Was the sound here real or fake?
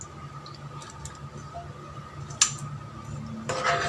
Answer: real